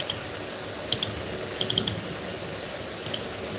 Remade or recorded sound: recorded